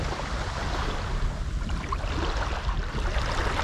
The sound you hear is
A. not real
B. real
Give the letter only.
B